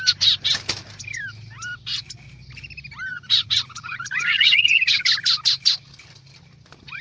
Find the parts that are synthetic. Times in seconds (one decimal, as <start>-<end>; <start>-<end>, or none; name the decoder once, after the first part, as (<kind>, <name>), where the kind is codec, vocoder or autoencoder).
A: 3.1-5.0 (vocoder, Vocos)